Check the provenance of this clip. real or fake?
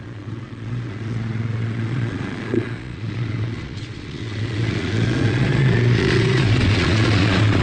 fake